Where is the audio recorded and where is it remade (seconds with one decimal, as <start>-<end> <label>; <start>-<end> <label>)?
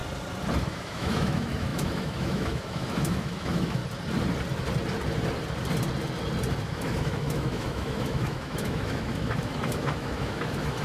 0.0-0.6 recorded; 0.6-3.8 remade; 3.8-6.6 recorded; 6.6-10.8 remade